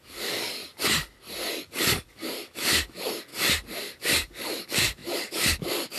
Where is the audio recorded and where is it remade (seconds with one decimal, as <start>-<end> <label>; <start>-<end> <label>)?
0.0-0.6 remade; 0.6-1.5 recorded; 1.5-3.3 remade; 3.3-3.8 recorded; 3.8-6.0 remade